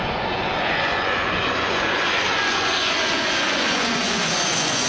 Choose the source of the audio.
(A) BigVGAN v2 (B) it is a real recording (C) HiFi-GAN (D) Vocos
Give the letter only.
D